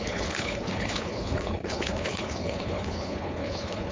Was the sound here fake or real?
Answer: fake